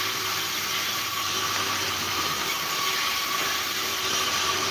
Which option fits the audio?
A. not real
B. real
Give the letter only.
A